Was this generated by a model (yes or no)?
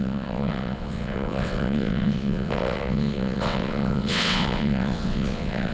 yes